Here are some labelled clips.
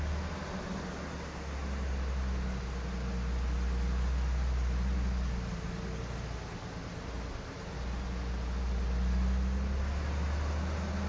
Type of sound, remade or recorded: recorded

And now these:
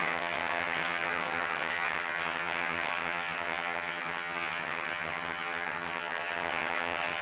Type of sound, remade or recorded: remade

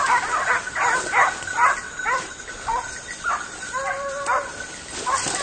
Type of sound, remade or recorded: recorded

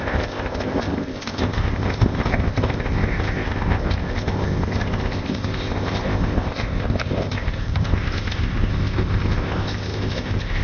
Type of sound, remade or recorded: remade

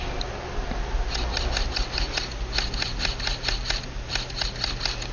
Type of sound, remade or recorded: recorded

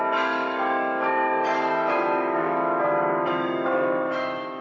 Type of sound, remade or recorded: remade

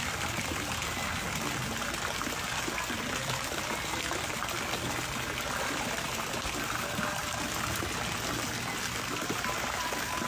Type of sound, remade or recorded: recorded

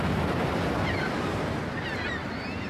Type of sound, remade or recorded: recorded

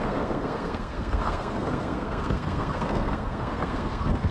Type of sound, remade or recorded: remade